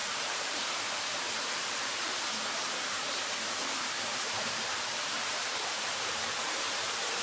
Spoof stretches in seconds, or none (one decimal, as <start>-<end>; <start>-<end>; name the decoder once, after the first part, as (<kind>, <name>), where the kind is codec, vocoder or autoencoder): 0.0-2.7 (vocoder, BigVGAN v2); 3.6-6.8